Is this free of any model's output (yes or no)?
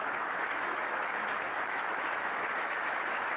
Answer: no